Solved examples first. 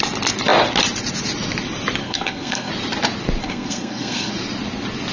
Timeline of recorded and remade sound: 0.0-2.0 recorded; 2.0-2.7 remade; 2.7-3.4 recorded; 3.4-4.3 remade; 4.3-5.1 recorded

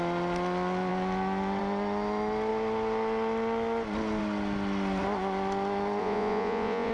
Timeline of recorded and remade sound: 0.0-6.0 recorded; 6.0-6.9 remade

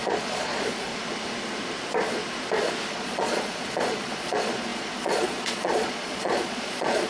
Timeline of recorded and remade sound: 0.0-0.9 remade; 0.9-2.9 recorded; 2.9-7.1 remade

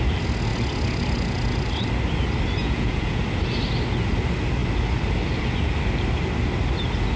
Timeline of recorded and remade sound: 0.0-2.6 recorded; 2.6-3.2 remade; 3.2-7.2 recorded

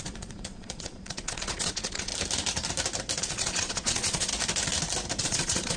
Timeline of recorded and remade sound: 0.0-2.1 remade; 2.1-3.2 recorded; 3.2-4.3 remade; 4.3-5.2 recorded; 5.2-5.8 remade

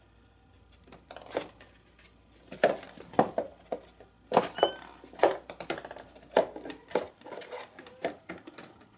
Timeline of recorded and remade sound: 0.0-9.0 recorded